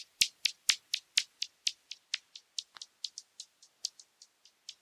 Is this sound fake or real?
real